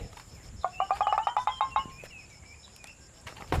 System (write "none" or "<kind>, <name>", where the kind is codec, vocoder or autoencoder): vocoder, BigVGAN v2